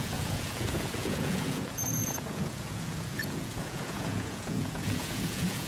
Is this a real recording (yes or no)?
no